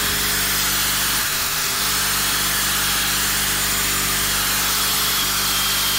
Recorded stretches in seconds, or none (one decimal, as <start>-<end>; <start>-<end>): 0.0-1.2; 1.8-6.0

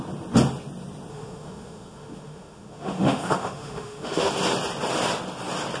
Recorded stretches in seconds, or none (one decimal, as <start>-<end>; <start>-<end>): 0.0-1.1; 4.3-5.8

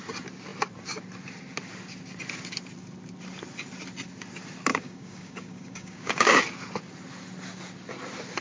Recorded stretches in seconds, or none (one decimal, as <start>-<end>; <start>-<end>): 0.0-4.7; 6.4-8.4

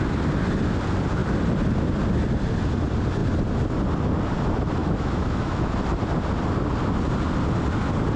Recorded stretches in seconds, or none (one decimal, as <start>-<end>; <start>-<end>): 0.0-4.8; 5.7-8.2

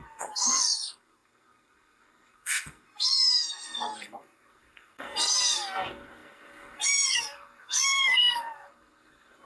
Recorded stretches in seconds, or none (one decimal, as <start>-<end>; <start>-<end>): none